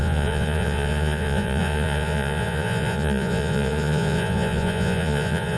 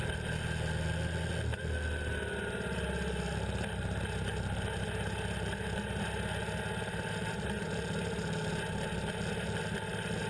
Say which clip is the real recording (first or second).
second